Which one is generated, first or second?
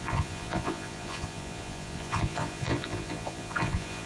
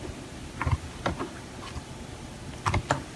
first